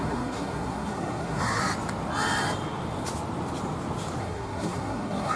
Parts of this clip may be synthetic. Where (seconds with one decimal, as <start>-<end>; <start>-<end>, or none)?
0.0-1.6; 4.2-5.4